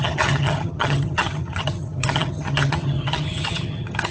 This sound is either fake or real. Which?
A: fake